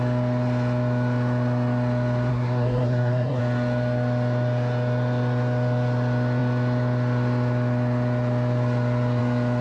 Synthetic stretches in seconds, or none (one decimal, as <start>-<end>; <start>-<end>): 2.3-3.4